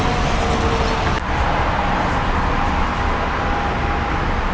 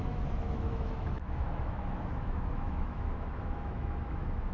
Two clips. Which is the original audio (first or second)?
first